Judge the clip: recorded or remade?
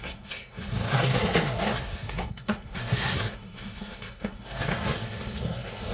remade